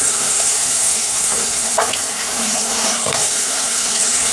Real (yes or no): no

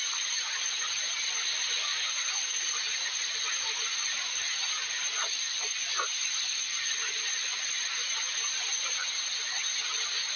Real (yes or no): yes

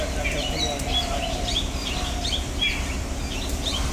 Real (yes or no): yes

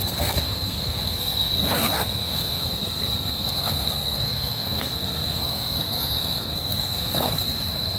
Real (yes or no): no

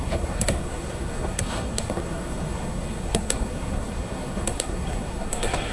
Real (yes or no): no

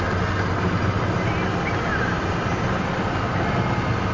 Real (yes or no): yes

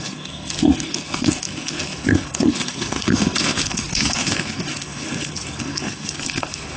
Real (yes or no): no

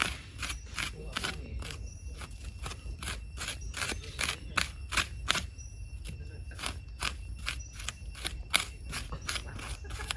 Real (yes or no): yes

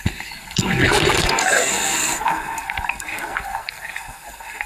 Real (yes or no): no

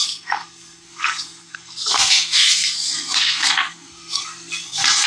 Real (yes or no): no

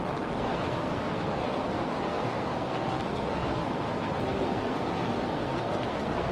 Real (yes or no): no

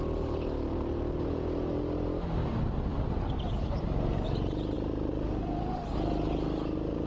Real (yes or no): yes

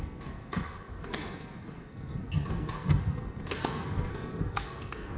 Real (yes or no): no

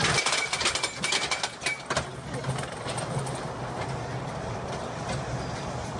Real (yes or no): yes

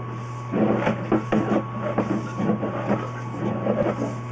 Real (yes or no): yes